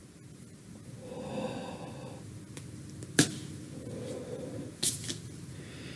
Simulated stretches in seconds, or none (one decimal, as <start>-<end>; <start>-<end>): none